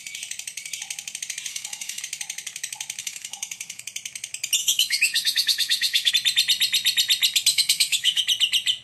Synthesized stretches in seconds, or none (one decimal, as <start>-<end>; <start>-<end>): 1.5-2.0; 3.0-3.8; 4.6-6.1; 7.5-8.2